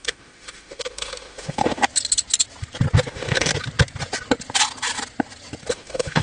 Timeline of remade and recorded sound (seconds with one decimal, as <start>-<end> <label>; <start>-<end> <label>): 0.0-1.8 remade; 1.8-3.1 recorded; 3.1-3.5 remade; 3.5-5.7 recorded; 5.7-6.2 remade